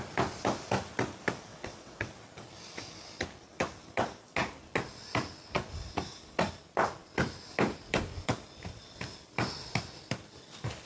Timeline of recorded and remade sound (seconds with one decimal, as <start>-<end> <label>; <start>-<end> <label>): 0.0-1.5 recorded; 1.5-2.1 remade; 2.1-10.9 recorded